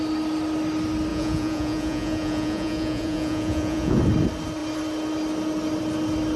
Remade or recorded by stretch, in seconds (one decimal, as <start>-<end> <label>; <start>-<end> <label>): 0.0-1.1 recorded; 1.1-4.0 remade; 4.0-6.4 recorded